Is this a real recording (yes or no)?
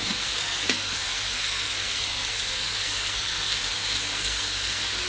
no